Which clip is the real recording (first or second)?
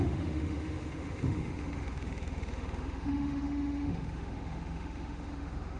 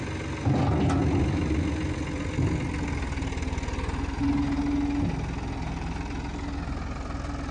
second